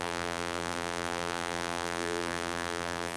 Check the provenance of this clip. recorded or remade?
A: remade